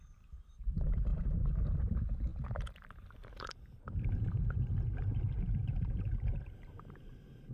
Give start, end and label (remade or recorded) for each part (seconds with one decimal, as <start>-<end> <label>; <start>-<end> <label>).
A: 0.0-1.1 remade; 1.1-1.6 recorded; 1.6-7.5 remade

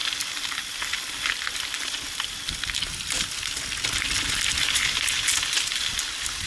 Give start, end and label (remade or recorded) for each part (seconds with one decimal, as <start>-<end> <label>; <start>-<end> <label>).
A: 0.0-6.5 recorded

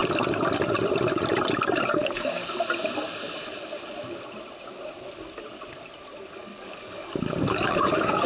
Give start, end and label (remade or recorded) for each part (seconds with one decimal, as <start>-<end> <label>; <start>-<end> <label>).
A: 0.0-1.9 recorded; 1.9-2.4 remade; 2.4-6.3 recorded; 6.3-8.3 remade

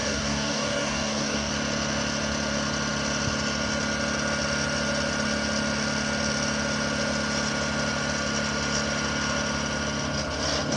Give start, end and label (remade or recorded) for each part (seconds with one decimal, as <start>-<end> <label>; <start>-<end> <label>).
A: 0.0-1.5 remade; 1.5-10.8 recorded